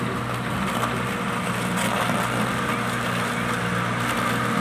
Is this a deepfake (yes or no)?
no